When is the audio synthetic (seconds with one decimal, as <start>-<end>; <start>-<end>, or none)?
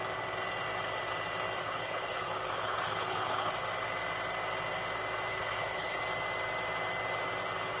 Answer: 1.6-3.5; 5.3-6.0